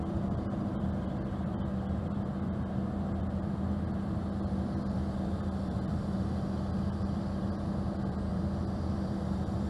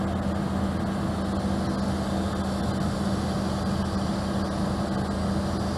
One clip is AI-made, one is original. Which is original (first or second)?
second